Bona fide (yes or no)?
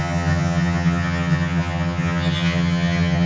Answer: no